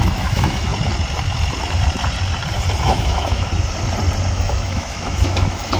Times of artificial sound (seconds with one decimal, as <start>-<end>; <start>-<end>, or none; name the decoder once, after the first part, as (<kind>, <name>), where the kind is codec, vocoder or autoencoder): 0.0-0.7 (autoencoder, DAC-VAE); 2.8-3.5; 4.3-5.8